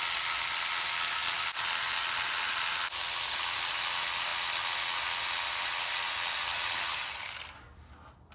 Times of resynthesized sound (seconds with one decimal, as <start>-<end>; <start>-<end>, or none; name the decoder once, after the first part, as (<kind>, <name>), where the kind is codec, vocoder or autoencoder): none